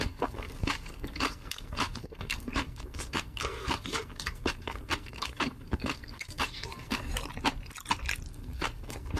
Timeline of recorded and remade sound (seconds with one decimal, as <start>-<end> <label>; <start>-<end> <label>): 0.0-7.1 remade; 7.1-8.3 recorded; 8.3-9.2 remade